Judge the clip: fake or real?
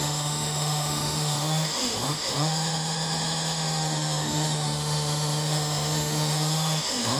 fake